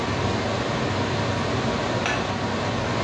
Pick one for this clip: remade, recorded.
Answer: recorded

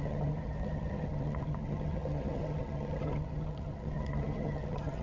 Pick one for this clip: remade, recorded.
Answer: remade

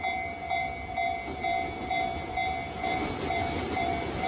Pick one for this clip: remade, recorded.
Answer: recorded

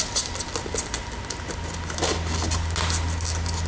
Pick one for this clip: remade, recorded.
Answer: recorded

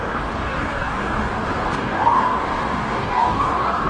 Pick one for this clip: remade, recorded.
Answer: remade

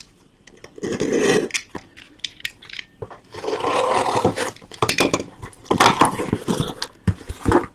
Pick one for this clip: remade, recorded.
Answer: recorded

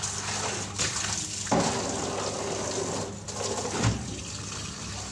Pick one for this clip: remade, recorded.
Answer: recorded